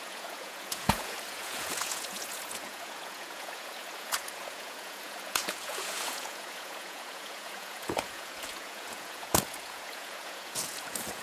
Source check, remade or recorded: remade